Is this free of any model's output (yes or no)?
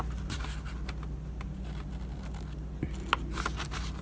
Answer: yes